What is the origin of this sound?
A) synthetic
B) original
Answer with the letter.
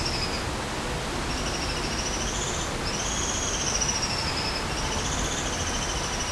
B